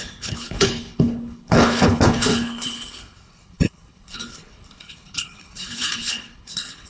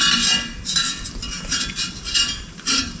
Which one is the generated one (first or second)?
first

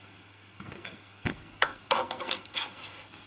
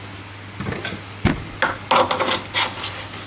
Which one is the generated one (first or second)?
first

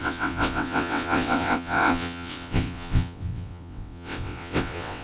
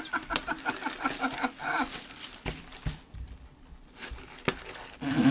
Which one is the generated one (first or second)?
first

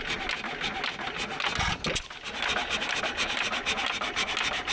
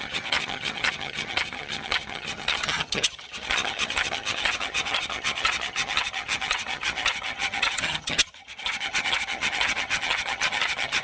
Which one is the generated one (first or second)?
second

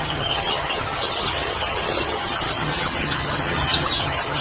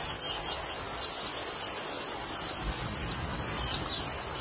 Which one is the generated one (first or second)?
first